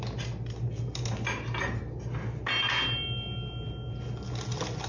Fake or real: real